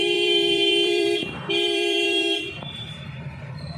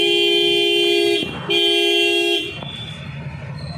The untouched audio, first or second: second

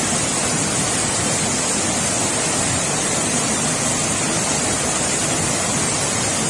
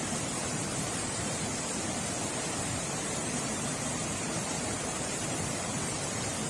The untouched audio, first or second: first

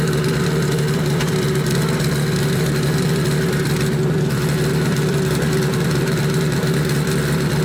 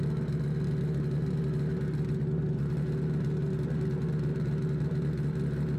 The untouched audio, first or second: second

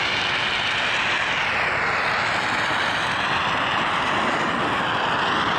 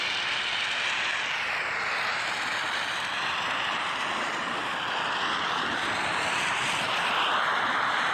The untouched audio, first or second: first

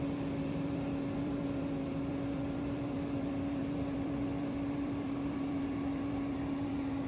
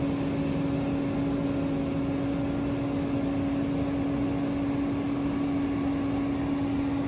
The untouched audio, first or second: second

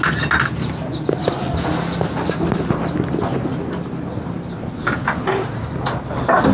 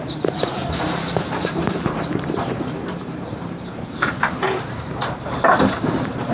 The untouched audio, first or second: first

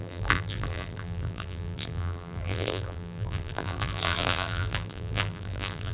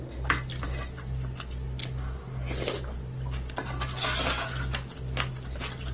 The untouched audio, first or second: second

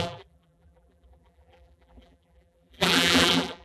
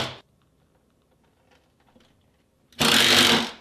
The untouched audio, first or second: second